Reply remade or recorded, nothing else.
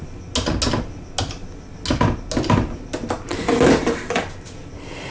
recorded